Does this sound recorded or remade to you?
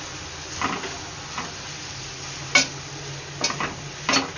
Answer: recorded